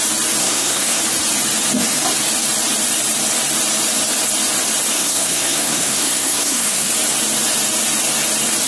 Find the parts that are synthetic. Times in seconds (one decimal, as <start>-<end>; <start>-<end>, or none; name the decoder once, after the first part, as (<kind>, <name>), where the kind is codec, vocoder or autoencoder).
0.4-1.0 (codec, SNAC); 4.9-6.9